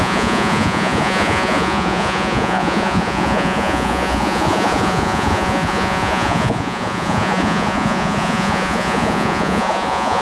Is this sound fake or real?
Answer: fake